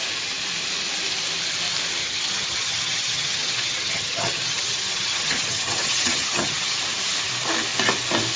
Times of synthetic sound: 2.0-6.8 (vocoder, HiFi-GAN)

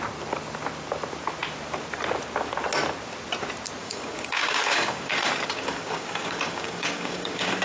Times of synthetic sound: 3.8-7.6 (codec, DAC)

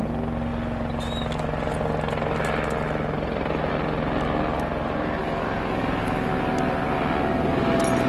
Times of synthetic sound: 5.2-6.3 (codec, DAC)

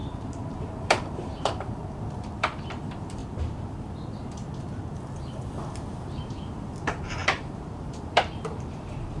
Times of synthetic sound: 0.0-1.8 (vocoder, BigVGAN v2); 2.4-3.2; 5.9-9.2

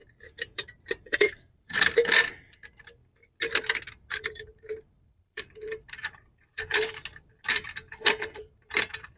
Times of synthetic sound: 0.0-3.0 (vocoder, BigVGAN v2); 4.1-7.0; 7.5-9.2